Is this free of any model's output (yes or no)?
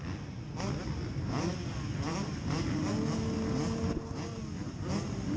yes